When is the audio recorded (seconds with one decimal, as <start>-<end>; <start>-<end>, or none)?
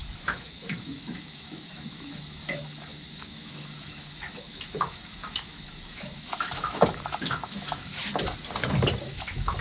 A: 8.0-9.0